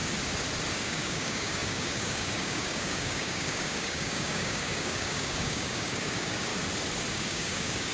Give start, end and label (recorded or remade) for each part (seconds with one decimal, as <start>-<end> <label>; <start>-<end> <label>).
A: 0.0-0.7 recorded; 0.7-6.5 remade; 6.5-7.1 recorded; 7.1-7.9 remade